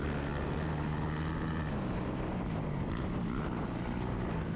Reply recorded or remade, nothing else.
recorded